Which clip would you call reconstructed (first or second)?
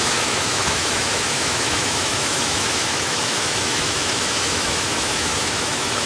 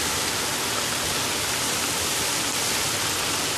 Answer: first